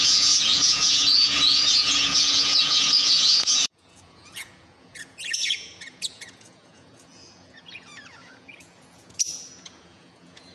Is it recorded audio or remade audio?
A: remade